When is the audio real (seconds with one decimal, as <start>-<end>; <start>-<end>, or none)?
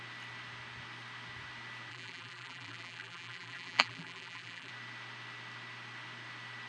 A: 0.0-1.9; 4.7-6.7